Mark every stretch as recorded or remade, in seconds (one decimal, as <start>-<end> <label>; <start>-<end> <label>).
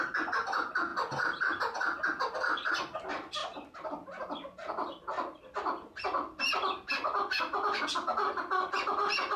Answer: 0.0-3.4 recorded; 3.4-3.9 remade; 3.9-9.4 recorded